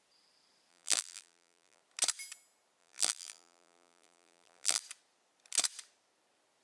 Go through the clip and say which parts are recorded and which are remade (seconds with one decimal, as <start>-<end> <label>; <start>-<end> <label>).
0.0-0.7 recorded; 0.7-1.8 remade; 1.8-2.8 recorded; 2.8-4.8 remade; 4.8-6.6 recorded